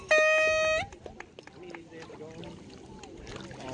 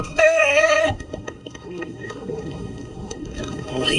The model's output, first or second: second